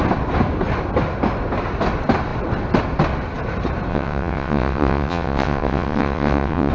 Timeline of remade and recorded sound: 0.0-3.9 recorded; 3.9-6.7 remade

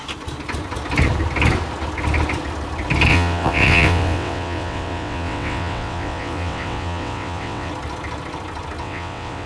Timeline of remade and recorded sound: 0.0-3.1 recorded; 3.1-7.7 remade; 7.7-8.8 recorded; 8.8-9.5 remade